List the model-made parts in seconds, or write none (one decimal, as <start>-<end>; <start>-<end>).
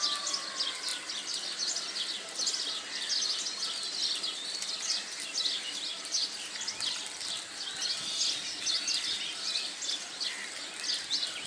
none